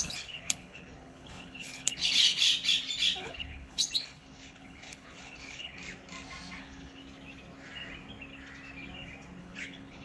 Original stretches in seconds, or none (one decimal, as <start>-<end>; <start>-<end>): 2.5-3.2; 5.8-6.6; 7.0-9.4